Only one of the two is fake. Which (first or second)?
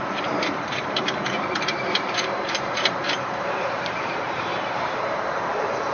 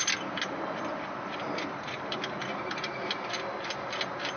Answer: first